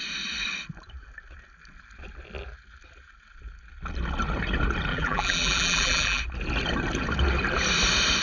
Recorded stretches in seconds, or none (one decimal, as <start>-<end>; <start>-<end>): 0.0-4.9; 6.2-8.2

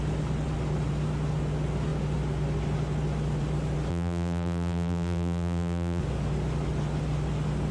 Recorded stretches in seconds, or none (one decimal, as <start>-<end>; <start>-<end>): 0.0-3.9; 6.0-7.7

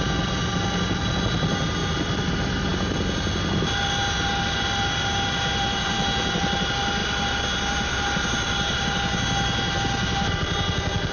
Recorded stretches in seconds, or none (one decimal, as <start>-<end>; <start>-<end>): 0.0-11.1

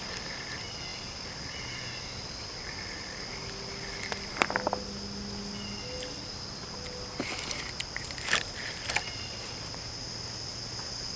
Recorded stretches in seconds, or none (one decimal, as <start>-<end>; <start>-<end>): 0.0-11.2

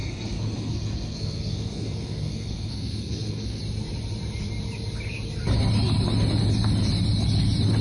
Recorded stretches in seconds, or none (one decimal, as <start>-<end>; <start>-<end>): 3.6-7.8

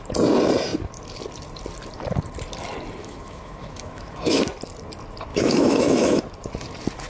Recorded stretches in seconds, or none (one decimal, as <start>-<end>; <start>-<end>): 0.0-3.0; 4.4-5.3; 6.2-7.1

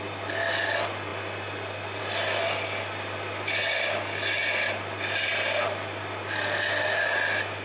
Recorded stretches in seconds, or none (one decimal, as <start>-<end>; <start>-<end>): 0.0-7.6